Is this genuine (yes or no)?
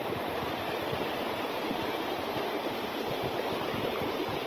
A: no